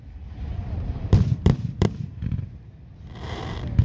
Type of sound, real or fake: fake